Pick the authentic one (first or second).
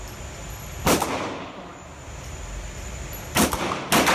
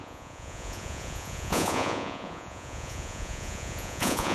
first